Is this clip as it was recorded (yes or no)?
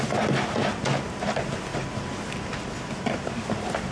yes